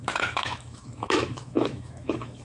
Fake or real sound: fake